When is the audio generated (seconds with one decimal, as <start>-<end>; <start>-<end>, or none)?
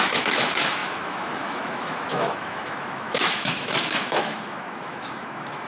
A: 0.0-5.7